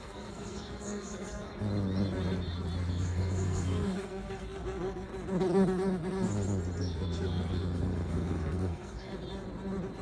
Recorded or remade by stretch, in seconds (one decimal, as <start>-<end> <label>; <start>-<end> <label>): 0.0-1.5 remade; 1.5-2.9 recorded; 2.9-5.1 remade; 5.1-6.8 recorded; 6.8-9.1 remade; 9.1-10.0 recorded